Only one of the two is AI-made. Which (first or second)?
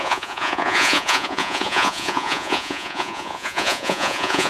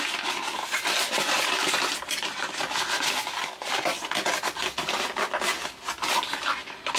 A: first